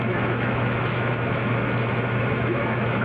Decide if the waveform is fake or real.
fake